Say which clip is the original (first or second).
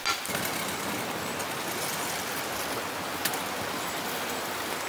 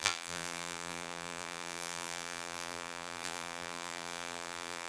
first